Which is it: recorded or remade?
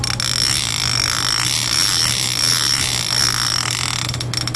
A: recorded